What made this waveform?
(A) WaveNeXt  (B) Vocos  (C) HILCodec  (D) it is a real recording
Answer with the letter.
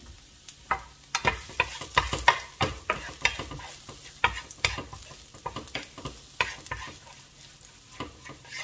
D